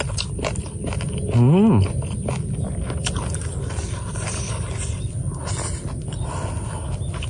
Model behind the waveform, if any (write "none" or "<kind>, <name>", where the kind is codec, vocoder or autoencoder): none